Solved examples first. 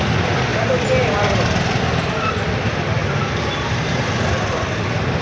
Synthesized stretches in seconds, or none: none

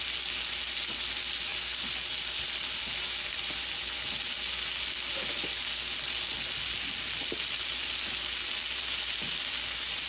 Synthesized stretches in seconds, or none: none